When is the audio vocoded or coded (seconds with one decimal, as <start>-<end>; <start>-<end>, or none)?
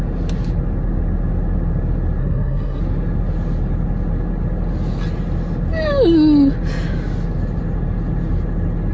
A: 2.2-2.8